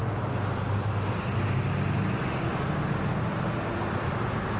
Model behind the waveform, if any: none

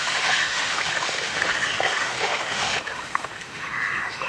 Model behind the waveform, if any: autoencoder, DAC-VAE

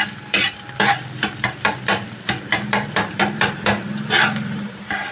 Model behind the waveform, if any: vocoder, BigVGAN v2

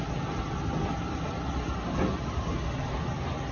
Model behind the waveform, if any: none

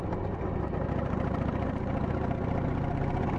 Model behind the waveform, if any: none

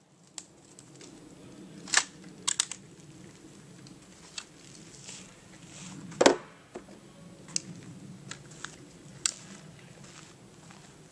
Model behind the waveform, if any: none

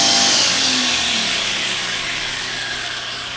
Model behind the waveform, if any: codec, DAC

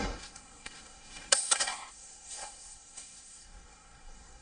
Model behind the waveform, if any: codec, SNAC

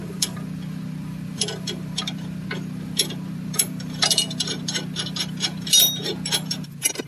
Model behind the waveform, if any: vocoder, BigVGAN v2